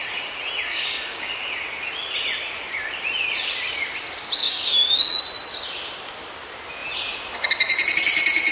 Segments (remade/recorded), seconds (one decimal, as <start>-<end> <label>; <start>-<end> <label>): 0.0-0.7 recorded; 0.7-1.4 remade; 1.4-4.4 recorded; 4.4-5.2 remade; 5.2-8.5 recorded